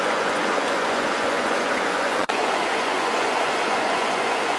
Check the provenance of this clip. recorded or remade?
remade